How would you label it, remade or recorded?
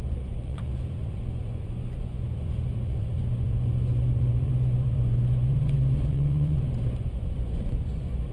remade